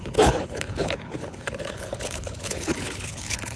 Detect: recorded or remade remade